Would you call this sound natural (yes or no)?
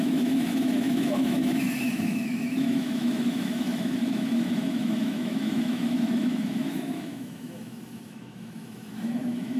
no